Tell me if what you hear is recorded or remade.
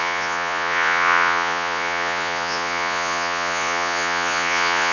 remade